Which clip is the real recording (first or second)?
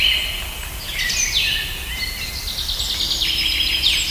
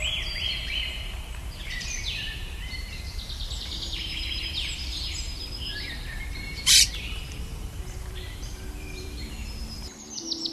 first